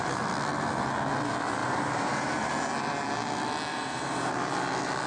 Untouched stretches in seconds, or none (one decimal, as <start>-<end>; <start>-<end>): 0.0-1.6; 2.5-3.7; 4.3-5.1